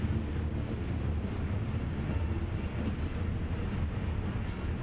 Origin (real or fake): real